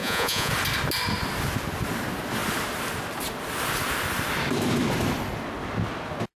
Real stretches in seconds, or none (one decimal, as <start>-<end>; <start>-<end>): 0.5-6.4